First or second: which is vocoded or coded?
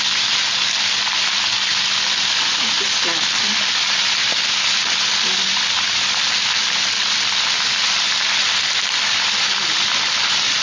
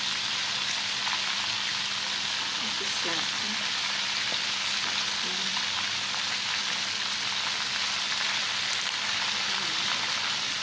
first